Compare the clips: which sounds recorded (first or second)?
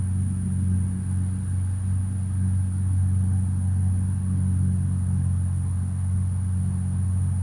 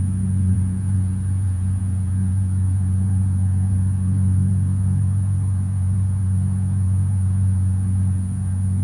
first